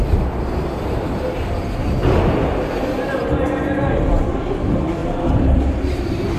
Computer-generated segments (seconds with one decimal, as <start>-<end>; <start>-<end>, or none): 5.0-6.0

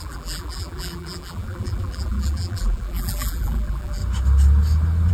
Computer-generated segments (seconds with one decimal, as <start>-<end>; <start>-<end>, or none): 0.0-4.0

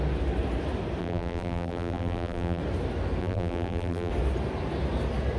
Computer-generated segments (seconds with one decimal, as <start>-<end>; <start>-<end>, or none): 1.0-2.6; 3.2-4.1

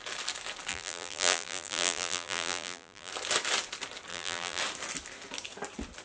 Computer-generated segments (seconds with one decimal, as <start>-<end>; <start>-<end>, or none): 0.7-3.1; 4.1-4.6

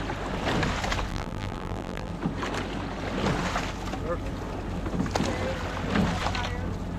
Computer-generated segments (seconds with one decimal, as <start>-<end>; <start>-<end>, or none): 1.1-2.1

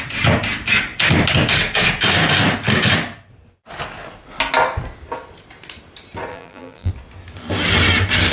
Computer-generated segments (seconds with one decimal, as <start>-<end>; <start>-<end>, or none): 6.3-6.9

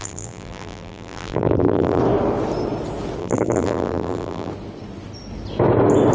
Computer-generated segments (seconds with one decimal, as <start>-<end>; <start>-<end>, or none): 0.0-2.0; 3.2-4.5

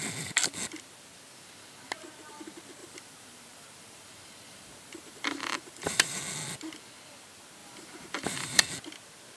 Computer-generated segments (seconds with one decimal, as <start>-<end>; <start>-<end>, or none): 2.8-6.2; 7.6-8.7